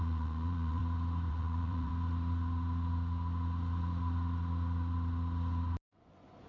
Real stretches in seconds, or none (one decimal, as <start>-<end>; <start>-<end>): 0.8-1.3; 1.9-5.8